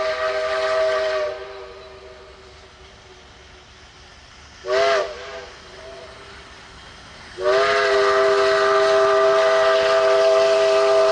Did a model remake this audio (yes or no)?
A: no